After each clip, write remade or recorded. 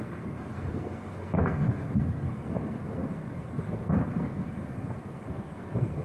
remade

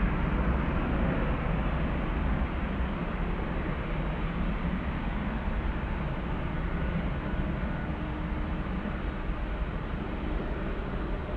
recorded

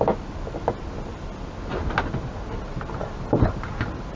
recorded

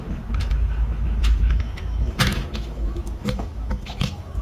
remade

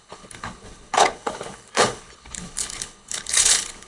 remade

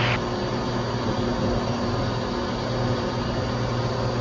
recorded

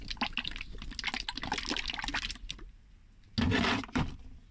recorded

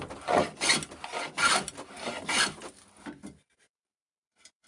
recorded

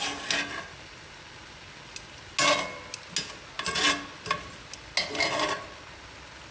recorded